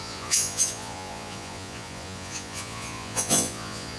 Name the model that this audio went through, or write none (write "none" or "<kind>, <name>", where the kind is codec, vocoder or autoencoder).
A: vocoder, Vocos